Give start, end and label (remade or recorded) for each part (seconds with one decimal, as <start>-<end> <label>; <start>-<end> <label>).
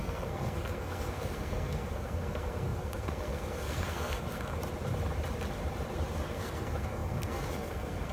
0.0-4.6 remade; 4.6-6.3 recorded; 6.3-8.1 remade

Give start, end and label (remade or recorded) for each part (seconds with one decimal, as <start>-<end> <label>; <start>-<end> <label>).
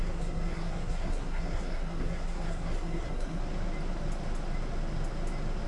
0.0-3.4 remade; 3.4-5.7 recorded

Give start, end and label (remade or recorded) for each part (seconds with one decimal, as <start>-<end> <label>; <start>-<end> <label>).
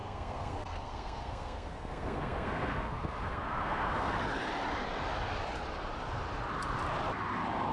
0.0-4.2 remade; 4.2-7.7 recorded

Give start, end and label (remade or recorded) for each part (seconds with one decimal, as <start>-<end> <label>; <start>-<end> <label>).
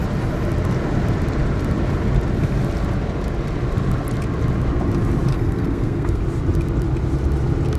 0.0-5.3 recorded; 5.3-6.2 remade; 6.2-7.8 recorded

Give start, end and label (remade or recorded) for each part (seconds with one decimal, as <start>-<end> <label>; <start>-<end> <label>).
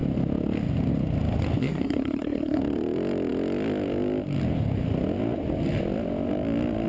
0.0-1.6 recorded; 1.6-2.6 remade; 2.6-6.9 recorded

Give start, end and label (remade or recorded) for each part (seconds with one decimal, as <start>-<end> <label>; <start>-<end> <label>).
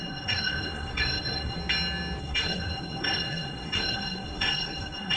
0.0-1.6 remade; 1.6-2.2 recorded; 2.2-5.2 remade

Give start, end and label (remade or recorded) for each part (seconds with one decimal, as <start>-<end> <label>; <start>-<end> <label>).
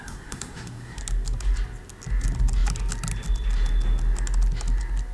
0.0-1.0 remade; 1.0-5.1 recorded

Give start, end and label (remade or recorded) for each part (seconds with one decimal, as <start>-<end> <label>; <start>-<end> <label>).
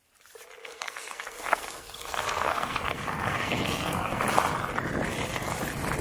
0.0-0.6 recorded; 0.6-4.2 remade; 4.2-6.0 recorded